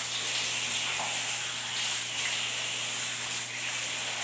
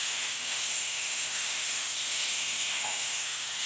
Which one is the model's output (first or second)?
second